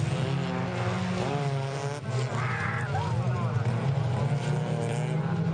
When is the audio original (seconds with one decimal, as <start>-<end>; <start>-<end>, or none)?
0.0-5.5